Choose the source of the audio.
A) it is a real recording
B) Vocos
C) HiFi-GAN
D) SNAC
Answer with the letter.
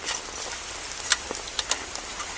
A